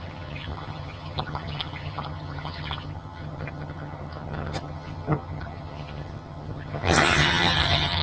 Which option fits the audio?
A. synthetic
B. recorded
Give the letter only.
A